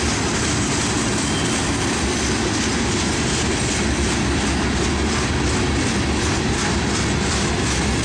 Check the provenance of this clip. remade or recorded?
recorded